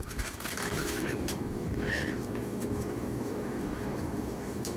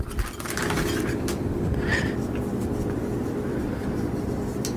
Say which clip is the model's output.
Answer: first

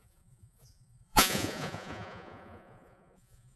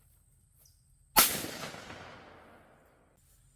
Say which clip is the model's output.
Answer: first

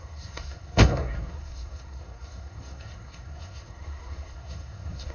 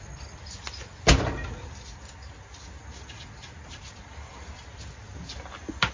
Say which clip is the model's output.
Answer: first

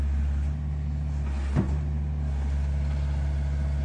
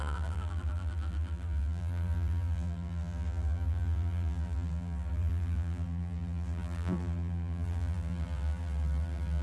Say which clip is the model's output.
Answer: second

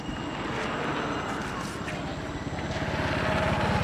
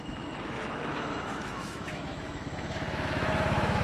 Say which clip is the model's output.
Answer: second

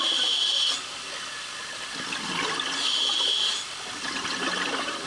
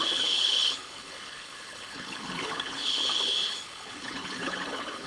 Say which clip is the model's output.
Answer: second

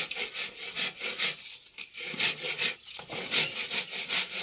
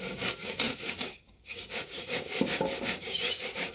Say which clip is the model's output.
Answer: second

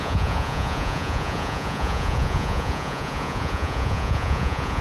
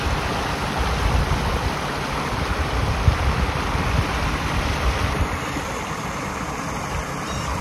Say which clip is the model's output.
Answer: first